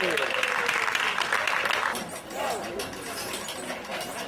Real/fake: real